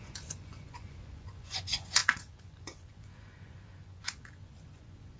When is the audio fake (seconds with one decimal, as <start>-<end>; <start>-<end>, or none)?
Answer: 0.0-5.2